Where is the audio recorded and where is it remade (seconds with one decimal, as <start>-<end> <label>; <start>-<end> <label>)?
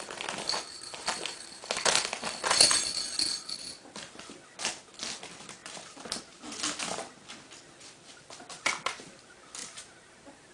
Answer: 0.0-5.6 recorded; 5.6-6.2 remade; 6.2-9.6 recorded; 9.6-10.5 remade